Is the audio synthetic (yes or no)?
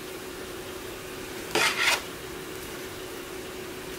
no